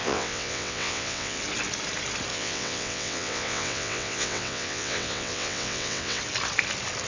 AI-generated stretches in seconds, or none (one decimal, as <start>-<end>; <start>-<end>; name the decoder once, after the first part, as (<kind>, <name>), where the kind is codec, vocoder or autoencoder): 0.0-1.4 (vocoder, WaveNeXt); 2.3-6.2